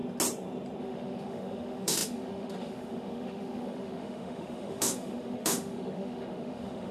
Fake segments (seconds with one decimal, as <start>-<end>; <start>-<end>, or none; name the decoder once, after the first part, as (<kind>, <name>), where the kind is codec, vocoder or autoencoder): 0.8-6.9 (autoencoder, DAC-VAE)

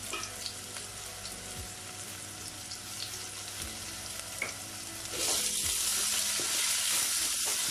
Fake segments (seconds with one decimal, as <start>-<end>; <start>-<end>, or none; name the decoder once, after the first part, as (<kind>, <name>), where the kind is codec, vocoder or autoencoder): none

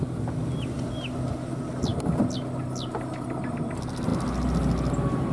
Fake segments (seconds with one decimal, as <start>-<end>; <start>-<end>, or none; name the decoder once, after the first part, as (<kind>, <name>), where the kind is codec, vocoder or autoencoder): none

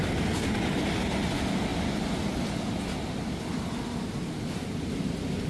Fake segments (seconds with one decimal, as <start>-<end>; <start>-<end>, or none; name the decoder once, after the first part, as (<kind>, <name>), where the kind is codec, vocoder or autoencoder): none